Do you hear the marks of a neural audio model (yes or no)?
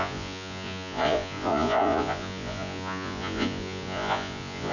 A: yes